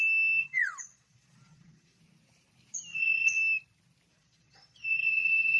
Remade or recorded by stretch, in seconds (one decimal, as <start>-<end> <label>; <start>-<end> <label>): 0.0-0.4 recorded; 0.4-2.0 remade; 2.0-2.9 recorded; 2.9-3.4 remade; 3.4-4.1 recorded; 4.1-5.6 remade